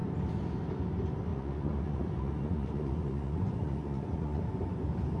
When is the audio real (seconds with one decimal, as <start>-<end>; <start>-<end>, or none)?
0.0-1.3; 4.4-5.2